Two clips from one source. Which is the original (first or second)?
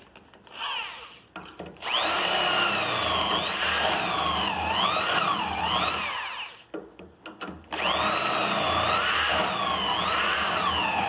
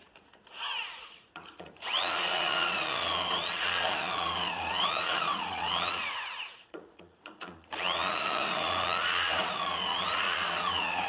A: first